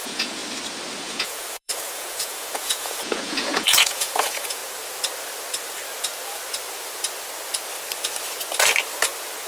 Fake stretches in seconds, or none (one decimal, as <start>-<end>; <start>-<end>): 0.0-0.4; 1.0-4.6